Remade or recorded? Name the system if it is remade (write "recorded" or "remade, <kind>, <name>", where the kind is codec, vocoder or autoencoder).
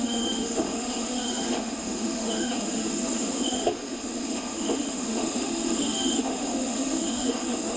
remade, autoencoder, DAC-VAE